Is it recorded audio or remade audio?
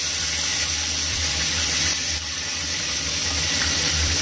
remade